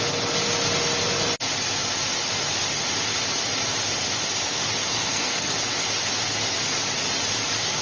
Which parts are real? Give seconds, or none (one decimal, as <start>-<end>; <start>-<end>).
0.0-4.8; 5.5-7.8